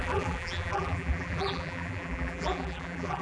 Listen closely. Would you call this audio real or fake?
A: fake